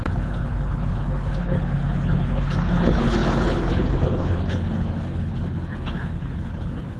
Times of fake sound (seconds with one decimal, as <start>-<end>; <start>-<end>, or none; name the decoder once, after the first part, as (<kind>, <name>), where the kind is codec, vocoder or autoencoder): 0.0-7.0 (codec, HILCodec)